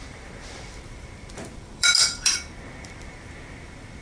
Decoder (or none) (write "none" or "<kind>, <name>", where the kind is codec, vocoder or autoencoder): vocoder, BigVGAN v2